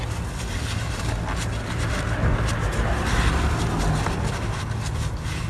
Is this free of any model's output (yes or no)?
yes